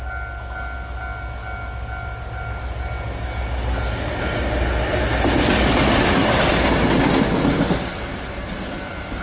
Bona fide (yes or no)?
yes